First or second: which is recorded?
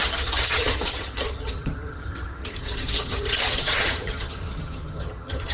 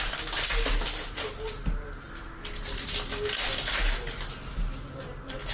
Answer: second